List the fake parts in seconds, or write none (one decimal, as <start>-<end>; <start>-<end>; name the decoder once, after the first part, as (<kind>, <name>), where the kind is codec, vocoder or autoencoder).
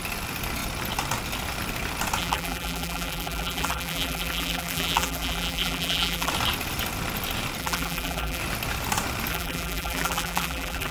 2.2-6.3 (vocoder, BigVGAN v2); 7.6-8.4; 9.3-10.9